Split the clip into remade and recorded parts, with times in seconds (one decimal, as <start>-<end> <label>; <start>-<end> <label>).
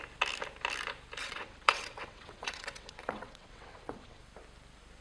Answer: 0.0-1.2 recorded; 1.2-4.2 remade; 4.2-5.0 recorded